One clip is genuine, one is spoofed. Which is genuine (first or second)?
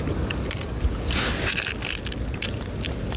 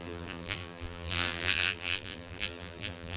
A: first